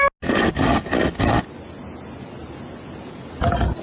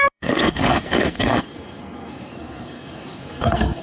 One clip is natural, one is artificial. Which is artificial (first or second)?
second